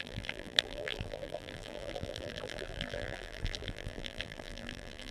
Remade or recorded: remade